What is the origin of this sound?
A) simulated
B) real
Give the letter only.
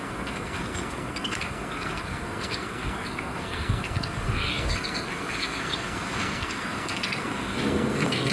A